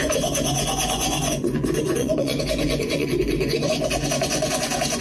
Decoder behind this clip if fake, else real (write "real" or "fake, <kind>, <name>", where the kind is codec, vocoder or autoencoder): fake, vocoder, Vocos